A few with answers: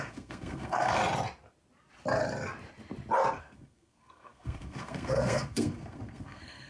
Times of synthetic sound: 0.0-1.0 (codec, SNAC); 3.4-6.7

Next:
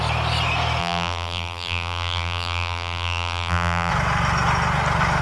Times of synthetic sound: 0.8-3.9 (vocoder, BigVGAN v2)

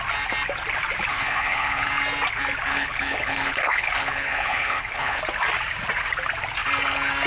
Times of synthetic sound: 1.1-1.9 (codec, HILCodec); 2.7-5.2

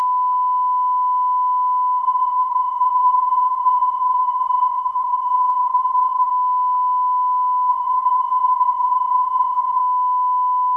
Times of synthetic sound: 2.0-6.3 (codec, HILCodec); 7.7-9.8

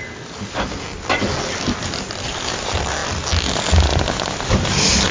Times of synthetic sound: none

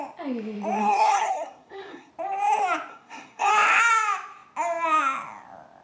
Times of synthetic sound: 0.8-2.1 (codec, SNAC); 2.9-3.5

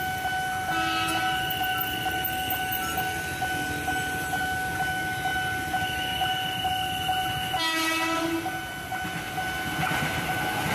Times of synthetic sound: none

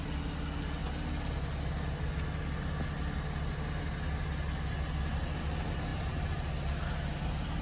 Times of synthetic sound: none